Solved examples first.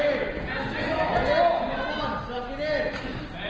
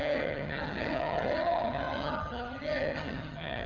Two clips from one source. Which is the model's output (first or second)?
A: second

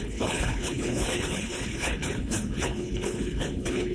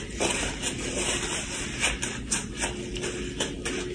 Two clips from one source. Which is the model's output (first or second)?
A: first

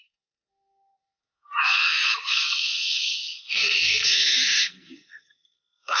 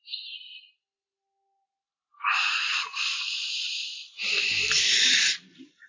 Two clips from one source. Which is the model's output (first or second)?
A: first